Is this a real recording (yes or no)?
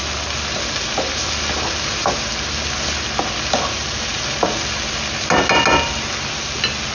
yes